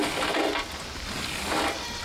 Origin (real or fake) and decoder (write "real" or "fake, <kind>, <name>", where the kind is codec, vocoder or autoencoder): real